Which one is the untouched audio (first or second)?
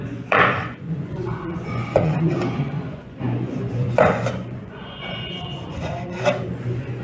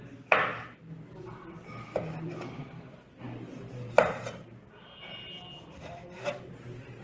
second